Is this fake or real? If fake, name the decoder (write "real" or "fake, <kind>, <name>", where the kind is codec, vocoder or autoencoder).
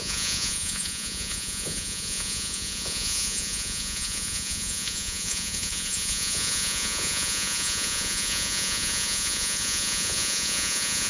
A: fake, vocoder, Vocos